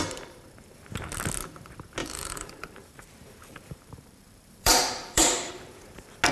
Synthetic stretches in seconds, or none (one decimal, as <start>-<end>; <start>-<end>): 2.0-5.5